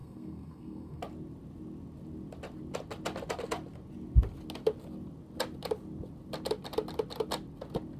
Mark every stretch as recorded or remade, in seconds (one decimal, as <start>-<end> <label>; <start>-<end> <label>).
0.0-1.0 remade; 1.0-8.0 recorded